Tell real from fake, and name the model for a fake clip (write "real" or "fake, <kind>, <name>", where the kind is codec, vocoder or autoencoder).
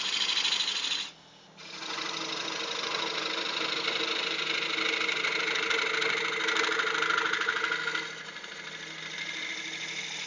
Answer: real